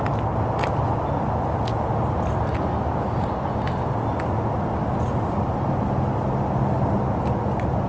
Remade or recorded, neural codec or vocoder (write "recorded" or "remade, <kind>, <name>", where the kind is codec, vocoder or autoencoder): recorded